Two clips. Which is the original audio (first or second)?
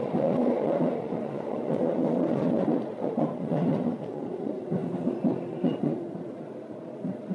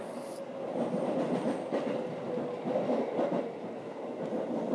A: second